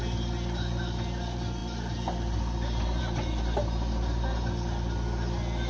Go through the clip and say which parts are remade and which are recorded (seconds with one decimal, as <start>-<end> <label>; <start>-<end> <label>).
0.0-5.7 recorded